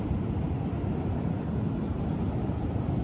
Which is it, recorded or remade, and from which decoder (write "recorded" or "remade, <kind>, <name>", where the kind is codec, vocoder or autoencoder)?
recorded